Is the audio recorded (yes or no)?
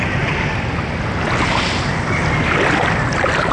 yes